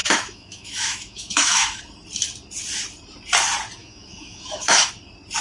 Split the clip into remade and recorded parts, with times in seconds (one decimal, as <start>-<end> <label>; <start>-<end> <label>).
0.0-1.8 remade; 1.8-3.8 recorded; 3.8-4.9 remade; 4.9-5.4 recorded